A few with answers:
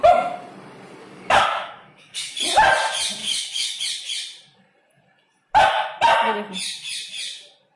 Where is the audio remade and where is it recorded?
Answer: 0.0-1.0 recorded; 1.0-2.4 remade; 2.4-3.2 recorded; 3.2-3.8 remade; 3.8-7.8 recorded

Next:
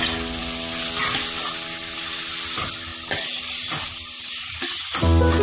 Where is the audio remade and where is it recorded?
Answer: 0.0-5.4 recorded

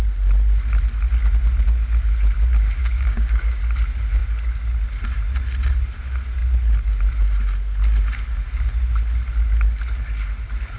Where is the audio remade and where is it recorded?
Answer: 0.0-2.8 recorded; 2.8-3.6 remade; 3.6-10.8 recorded

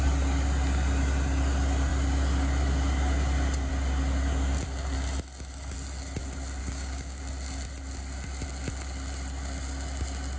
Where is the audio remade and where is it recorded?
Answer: 0.0-6.6 recorded; 6.6-7.2 remade; 7.2-10.4 recorded